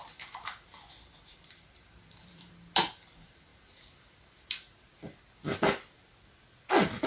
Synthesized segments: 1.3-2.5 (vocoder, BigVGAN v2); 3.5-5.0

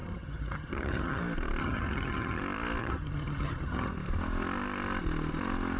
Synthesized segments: 0.0-1.2 (vocoder, HiFi-GAN); 1.6-2.4; 2.8-3.9

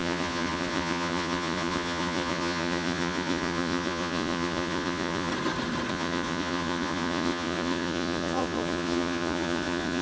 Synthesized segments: 0.0-5.3 (vocoder, Vocos); 5.9-10.0

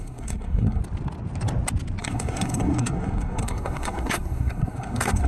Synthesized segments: 0.0-0.8 (codec, SNAC); 2.0-5.3

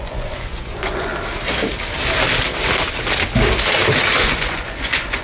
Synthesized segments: 0.0-1.1 (vocoder, Vocos); 4.2-5.2

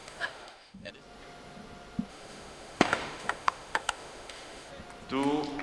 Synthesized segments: 0.0-0.9 (autoencoder, DAC-VAE); 2.1-4.7

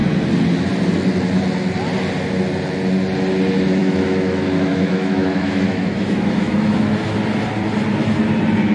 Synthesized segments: 3.8-6.8 (autoencoder, DAC-VAE)

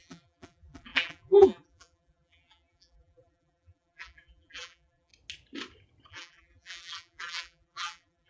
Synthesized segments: 0.0-5.1 (vocoder, BigVGAN v2); 6.1-8.3